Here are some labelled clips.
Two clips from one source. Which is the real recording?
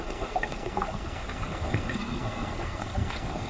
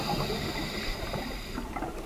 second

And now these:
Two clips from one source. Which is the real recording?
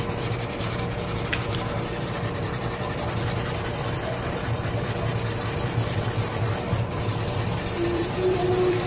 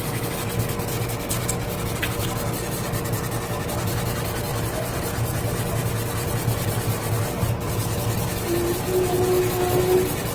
second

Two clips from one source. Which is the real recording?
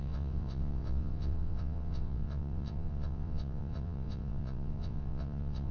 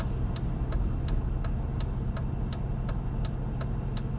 second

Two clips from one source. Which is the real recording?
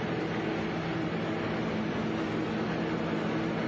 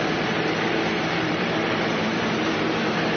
first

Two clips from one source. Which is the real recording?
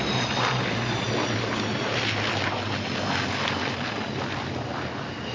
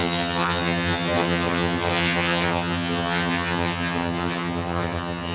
first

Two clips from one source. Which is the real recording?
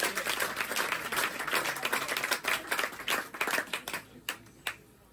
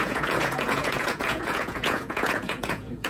first